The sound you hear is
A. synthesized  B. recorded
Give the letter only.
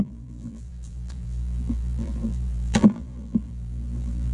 A